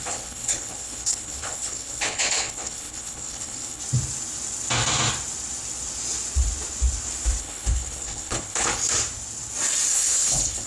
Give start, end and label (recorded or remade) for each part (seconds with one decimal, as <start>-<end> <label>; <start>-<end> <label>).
0.0-3.8 remade; 3.8-7.4 recorded; 7.4-8.8 remade; 8.8-9.9 recorded; 9.9-10.7 remade